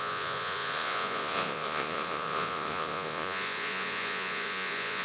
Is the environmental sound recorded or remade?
remade